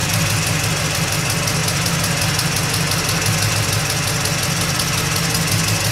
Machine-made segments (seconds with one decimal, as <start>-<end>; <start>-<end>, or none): none

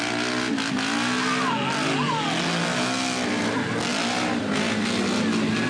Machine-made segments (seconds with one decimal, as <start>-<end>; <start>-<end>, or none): none